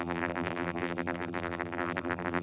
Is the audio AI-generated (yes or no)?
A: yes